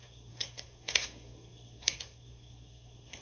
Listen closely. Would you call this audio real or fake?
fake